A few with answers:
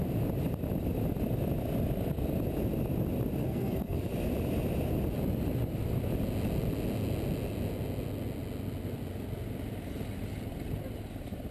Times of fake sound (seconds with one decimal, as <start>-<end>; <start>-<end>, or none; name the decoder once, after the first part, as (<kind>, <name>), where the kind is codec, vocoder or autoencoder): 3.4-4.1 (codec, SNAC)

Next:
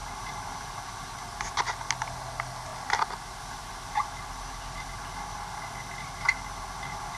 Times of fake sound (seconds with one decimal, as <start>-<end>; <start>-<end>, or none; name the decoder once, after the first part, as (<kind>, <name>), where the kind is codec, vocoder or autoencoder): none

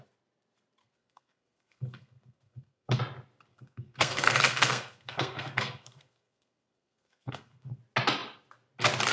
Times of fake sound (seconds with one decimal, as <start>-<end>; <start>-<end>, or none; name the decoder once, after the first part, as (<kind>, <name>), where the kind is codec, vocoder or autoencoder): 0.8-3.0 (codec, SNAC); 3.5-7.8

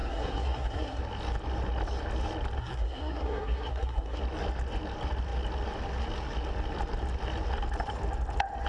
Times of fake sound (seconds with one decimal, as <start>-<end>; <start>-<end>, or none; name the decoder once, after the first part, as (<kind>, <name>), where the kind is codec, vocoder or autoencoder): 0.0-1.0 (codec, SNAC); 2.6-4.2

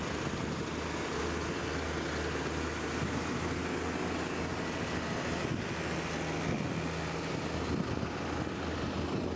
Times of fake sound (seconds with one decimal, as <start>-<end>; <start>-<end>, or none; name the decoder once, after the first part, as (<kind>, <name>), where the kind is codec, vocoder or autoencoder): none

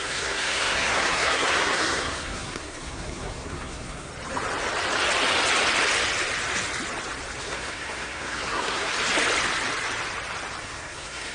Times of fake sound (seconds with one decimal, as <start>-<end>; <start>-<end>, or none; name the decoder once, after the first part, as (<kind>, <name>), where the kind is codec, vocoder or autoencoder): 0.0-4.1 (codec, SNAC); 7.4-8.9; 10.6-11.3

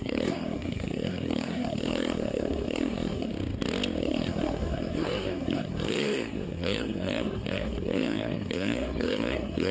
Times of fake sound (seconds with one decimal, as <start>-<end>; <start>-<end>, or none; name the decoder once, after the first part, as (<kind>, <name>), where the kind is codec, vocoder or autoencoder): 0.0-3.3 (codec, SNAC); 4.0-9.7